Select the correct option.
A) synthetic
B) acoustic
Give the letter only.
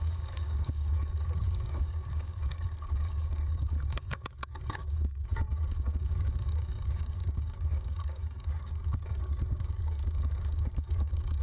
A